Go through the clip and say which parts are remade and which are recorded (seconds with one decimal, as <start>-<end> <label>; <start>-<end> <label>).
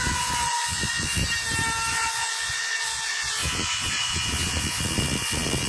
0.0-1.2 remade; 1.2-1.9 recorded; 1.9-5.7 remade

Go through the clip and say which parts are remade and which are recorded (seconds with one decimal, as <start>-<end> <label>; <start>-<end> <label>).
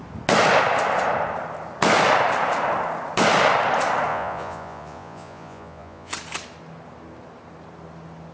0.0-4.1 recorded; 4.1-6.1 remade; 6.1-8.3 recorded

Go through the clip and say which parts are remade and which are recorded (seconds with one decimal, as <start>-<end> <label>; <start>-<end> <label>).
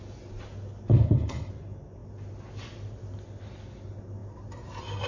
0.0-0.9 recorded; 0.9-1.5 remade; 1.5-5.1 recorded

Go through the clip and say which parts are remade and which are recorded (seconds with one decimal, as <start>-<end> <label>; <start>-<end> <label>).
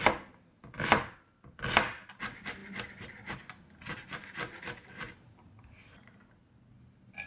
0.0-2.6 recorded; 2.6-6.5 remade; 6.5-7.3 recorded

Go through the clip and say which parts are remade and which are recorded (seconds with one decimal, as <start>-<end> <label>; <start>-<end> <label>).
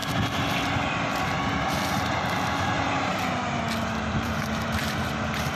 0.0-2.0 recorded; 2.0-3.1 remade; 3.1-3.9 recorded; 3.9-5.6 remade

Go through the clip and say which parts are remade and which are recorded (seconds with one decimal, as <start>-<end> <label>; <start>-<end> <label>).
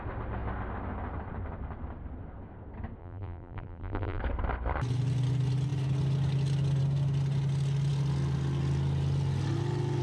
0.0-3.0 recorded; 3.0-4.2 remade; 4.2-10.0 recorded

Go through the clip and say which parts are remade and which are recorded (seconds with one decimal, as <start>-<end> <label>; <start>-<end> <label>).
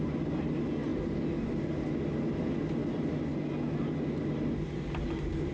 0.0-5.5 recorded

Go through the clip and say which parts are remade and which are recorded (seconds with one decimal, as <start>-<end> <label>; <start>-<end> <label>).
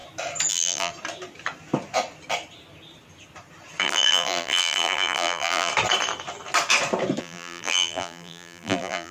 0.0-0.5 recorded; 0.5-0.9 remade; 0.9-3.8 recorded; 3.8-5.7 remade; 5.7-7.2 recorded; 7.2-9.1 remade